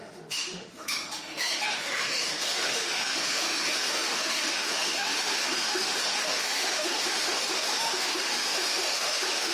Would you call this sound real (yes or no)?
no